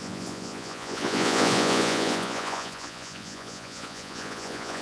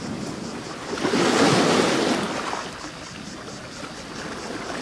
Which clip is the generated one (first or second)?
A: first